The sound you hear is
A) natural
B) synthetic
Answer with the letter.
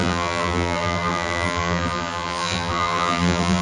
B